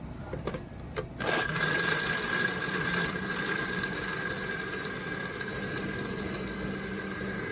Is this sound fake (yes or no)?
no